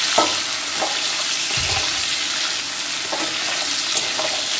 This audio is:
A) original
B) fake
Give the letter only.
A